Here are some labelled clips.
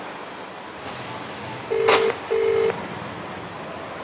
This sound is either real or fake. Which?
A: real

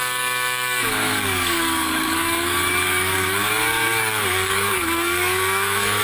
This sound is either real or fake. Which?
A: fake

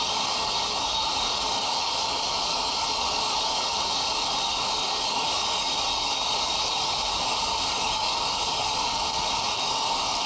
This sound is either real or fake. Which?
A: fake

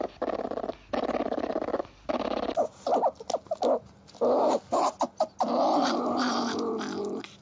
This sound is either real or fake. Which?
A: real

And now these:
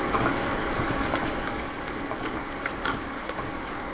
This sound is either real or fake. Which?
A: fake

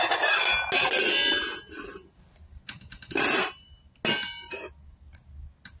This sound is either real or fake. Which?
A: real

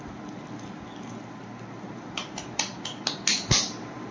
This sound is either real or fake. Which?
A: real